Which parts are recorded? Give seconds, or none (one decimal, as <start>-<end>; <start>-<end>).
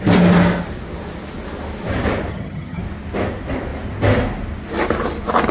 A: 0.0-2.3; 2.8-5.5